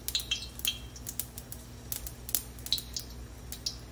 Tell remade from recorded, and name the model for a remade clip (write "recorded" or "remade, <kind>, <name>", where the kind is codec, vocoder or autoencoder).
recorded